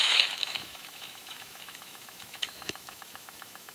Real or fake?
fake